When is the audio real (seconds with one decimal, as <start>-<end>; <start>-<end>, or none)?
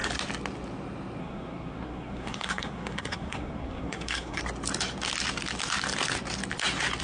0.0-1.2; 4.4-7.0